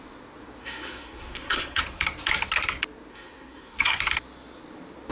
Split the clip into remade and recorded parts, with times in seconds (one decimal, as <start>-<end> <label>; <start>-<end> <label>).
0.0-0.6 recorded; 0.6-1.8 remade; 1.8-3.1 recorded; 3.1-4.0 remade; 4.0-5.1 recorded